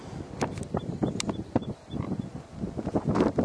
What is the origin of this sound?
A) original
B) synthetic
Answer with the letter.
A